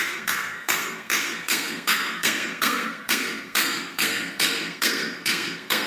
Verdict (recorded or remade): remade